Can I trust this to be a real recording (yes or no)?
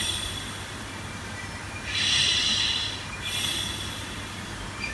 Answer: yes